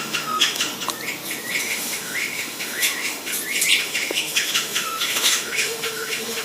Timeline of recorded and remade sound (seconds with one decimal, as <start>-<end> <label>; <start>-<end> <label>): 0.0-0.7 remade; 0.7-1.6 recorded; 1.6-3.3 remade; 3.3-3.8 recorded; 3.8-6.4 remade